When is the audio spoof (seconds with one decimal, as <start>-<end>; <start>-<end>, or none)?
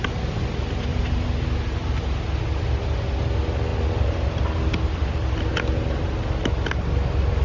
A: none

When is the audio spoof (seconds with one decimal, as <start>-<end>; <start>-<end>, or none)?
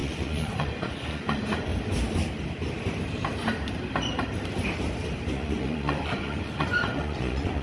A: 0.0-1.7; 5.3-7.6